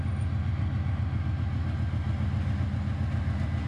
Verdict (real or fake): real